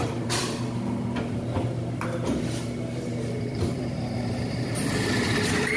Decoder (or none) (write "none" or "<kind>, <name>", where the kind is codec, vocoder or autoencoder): vocoder, BigVGAN v2